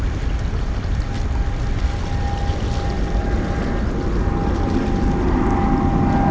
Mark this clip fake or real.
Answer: real